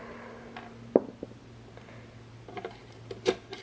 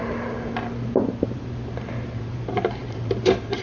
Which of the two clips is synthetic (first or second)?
second